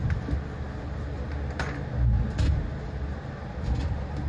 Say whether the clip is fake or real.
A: real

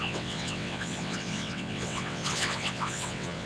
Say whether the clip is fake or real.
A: fake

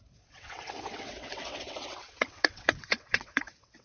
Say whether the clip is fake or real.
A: fake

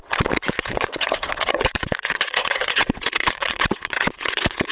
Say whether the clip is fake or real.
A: fake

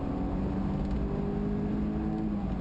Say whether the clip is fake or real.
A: real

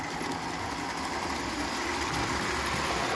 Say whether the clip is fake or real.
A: real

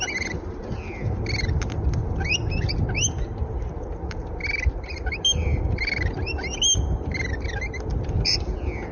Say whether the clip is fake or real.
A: real